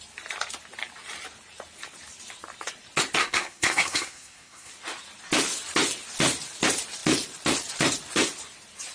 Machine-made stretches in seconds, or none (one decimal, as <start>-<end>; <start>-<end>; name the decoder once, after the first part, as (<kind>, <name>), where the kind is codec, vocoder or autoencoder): 3.2-4.7 (codec, SNAC)